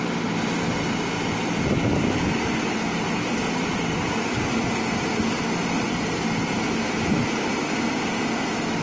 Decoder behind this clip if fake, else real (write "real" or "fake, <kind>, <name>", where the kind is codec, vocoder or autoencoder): real